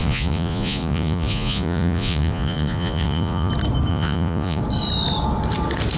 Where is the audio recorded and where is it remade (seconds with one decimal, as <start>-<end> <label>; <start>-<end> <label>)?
0.0-3.5 remade; 3.5-3.9 recorded; 3.9-4.6 remade; 4.6-6.0 recorded